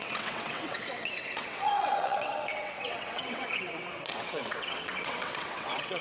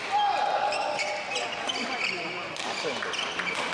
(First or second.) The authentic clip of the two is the second